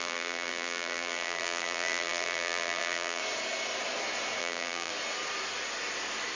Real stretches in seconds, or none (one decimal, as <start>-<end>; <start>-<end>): 3.2-4.4; 4.9-6.4